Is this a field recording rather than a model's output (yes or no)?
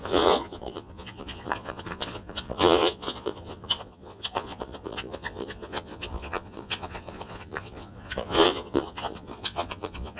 no